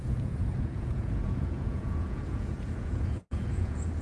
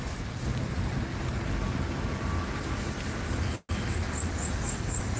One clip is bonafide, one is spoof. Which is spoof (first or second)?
first